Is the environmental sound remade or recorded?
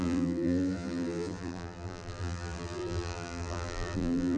remade